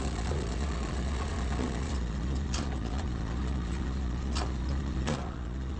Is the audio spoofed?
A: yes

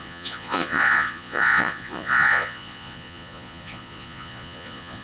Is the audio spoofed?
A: yes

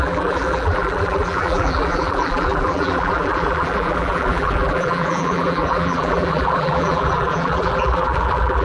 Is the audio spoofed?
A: yes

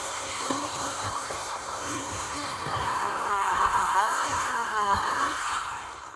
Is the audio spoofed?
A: yes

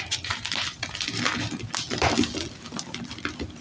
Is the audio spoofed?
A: no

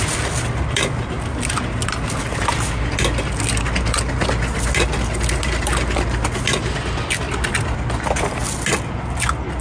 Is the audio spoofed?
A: no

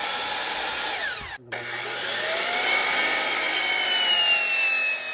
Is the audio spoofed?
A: no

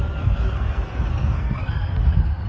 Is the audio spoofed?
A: yes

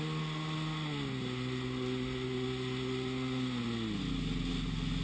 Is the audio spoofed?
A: no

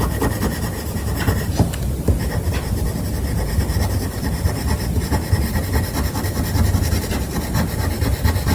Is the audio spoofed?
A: no